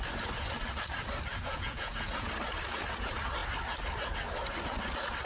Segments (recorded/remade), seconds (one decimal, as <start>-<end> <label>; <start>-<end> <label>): 0.0-1.3 recorded; 1.3-2.3 remade; 2.3-5.3 recorded